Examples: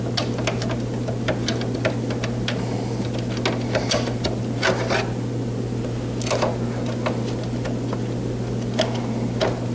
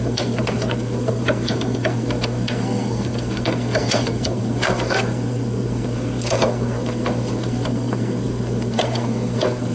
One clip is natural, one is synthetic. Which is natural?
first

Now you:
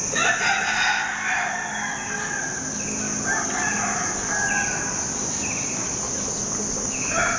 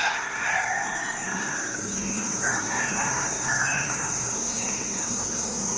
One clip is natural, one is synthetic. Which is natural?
first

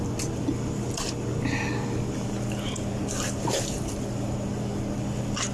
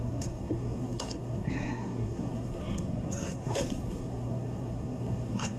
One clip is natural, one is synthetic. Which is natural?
first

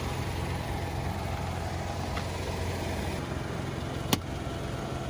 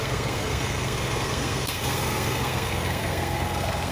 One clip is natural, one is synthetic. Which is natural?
first